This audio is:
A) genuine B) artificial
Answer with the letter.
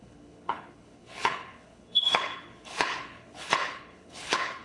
B